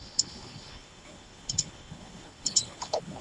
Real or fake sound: fake